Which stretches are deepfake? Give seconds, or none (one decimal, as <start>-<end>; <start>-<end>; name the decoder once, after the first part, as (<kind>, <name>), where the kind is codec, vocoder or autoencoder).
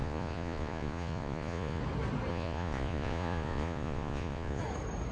0.0-1.8 (vocoder, Vocos); 2.3-4.6